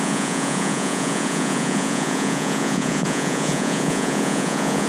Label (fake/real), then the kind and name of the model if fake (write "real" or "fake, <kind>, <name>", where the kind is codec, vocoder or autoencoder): fake, vocoder, Vocos